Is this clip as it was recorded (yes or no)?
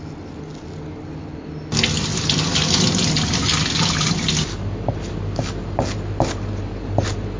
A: yes